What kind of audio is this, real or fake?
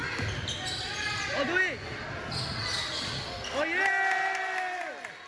real